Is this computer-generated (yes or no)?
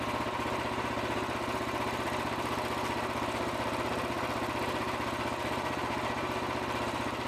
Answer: no